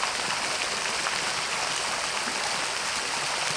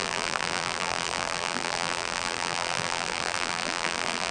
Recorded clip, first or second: first